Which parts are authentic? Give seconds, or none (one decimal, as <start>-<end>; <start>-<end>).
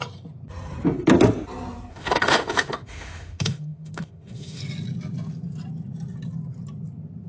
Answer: 0.0-1.9; 4.6-7.3